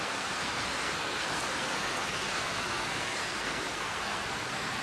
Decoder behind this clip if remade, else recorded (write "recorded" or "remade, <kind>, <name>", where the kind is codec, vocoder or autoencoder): remade, codec, SNAC